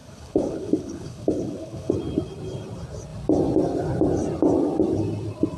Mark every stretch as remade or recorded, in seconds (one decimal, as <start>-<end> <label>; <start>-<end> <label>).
0.0-1.9 remade; 1.9-5.6 recorded